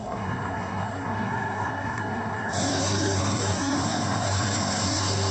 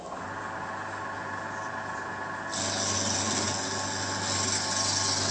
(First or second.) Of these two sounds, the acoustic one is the second